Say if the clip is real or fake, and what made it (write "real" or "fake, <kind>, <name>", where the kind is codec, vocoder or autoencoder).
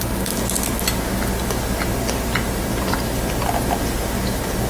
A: real